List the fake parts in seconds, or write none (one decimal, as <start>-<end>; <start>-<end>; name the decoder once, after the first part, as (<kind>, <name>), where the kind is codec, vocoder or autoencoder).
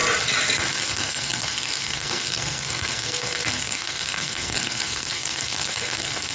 0.9-6.3 (codec, SNAC)